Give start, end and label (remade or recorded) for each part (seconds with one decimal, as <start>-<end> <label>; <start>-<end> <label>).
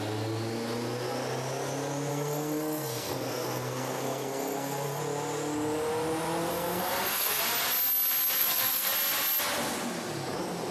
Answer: 0.0-2.1 recorded; 2.1-5.0 remade; 5.0-6.5 recorded; 6.5-7.4 remade; 7.4-8.4 recorded; 8.4-8.9 remade; 8.9-10.7 recorded